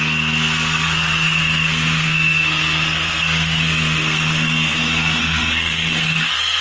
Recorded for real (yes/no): no